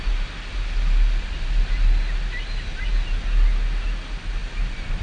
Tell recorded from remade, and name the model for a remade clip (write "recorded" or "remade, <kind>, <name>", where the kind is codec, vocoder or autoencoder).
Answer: recorded